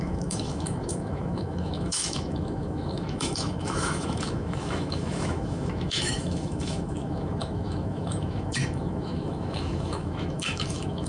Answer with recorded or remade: remade